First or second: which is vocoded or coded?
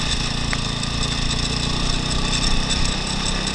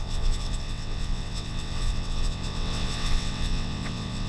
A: second